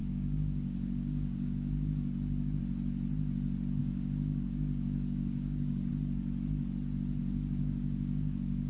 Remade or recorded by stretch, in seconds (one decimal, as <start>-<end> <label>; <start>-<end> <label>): 0.0-2.6 remade; 2.6-3.8 recorded; 3.8-5.9 remade; 5.9-7.2 recorded; 7.2-8.7 remade